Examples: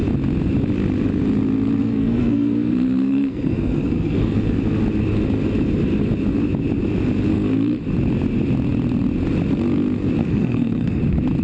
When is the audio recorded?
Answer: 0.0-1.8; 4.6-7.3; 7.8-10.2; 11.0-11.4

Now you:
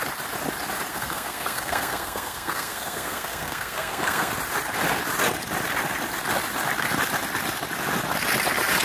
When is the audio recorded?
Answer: 0.0-0.9; 4.3-8.8

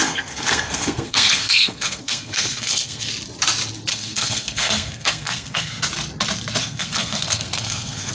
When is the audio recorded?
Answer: 3.1-3.9; 5.8-6.6